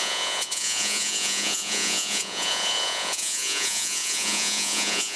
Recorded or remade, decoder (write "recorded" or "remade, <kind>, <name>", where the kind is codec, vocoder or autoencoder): remade, vocoder, Vocos